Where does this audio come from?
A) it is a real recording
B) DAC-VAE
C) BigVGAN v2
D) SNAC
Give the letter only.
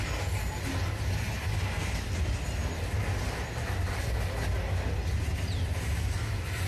A